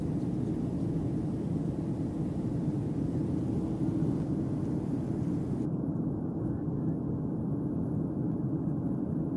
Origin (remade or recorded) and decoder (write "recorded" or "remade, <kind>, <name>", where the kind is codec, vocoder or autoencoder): recorded